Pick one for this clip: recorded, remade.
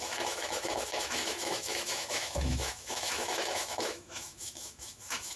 remade